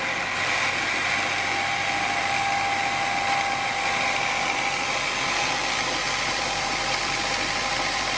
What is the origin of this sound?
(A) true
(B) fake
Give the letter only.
A